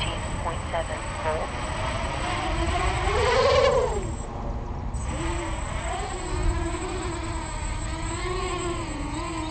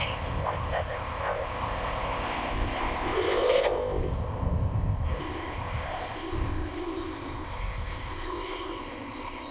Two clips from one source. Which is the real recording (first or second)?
first